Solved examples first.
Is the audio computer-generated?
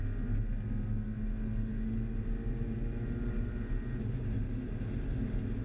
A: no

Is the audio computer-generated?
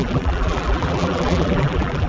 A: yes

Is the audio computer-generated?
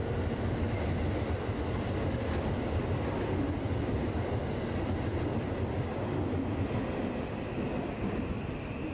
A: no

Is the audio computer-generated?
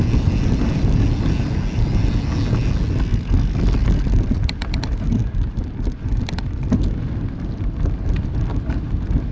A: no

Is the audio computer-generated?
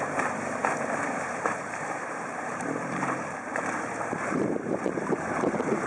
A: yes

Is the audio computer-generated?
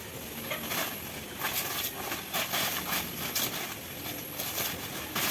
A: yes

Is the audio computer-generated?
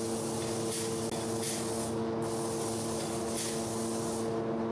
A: no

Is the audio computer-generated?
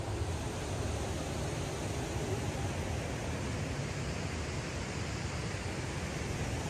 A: no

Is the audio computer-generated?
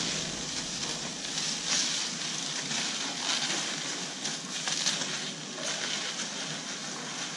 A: no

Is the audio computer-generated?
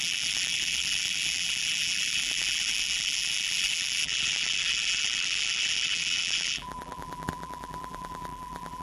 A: yes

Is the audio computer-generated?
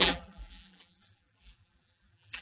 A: yes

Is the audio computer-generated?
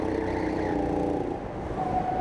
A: no